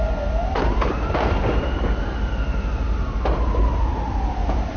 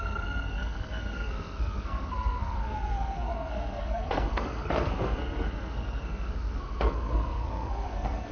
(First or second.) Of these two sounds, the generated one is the second